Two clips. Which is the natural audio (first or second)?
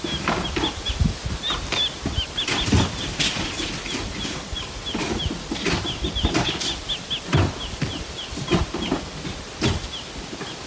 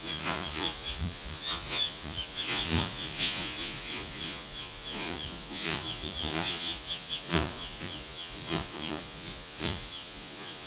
first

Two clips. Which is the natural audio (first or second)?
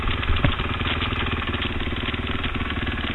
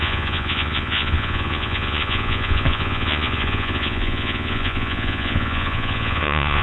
first